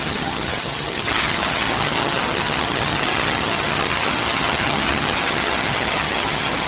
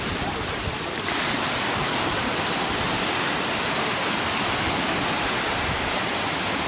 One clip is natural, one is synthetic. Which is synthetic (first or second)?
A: first